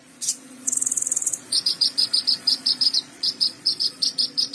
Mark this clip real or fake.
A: fake